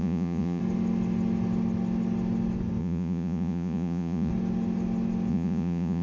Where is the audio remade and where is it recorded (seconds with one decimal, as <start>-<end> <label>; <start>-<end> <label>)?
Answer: 0.0-0.6 remade; 0.6-2.8 recorded; 2.8-4.3 remade; 4.3-5.3 recorded; 5.3-6.0 remade